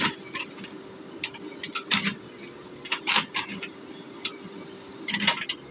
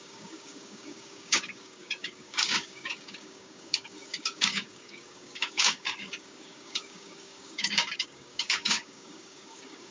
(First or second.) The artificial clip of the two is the second